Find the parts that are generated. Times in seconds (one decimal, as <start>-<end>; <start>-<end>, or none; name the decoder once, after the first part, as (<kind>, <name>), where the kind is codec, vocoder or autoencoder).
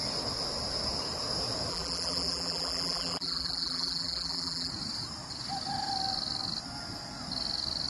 1.7-4.7 (vocoder, BigVGAN v2)